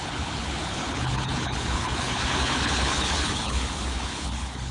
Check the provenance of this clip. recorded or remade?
remade